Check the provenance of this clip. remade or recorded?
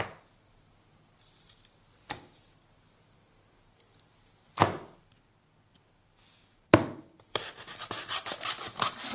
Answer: recorded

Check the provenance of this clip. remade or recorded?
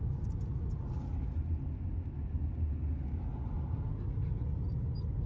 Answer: recorded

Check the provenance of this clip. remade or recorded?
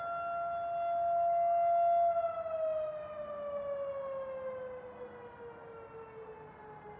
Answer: recorded